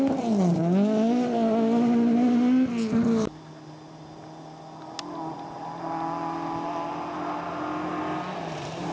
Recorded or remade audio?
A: recorded